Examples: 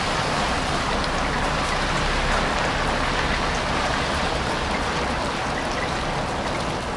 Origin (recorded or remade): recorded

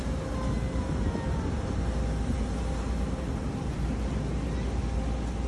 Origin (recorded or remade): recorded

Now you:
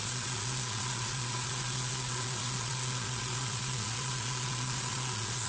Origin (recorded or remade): remade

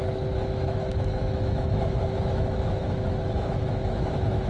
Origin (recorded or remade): remade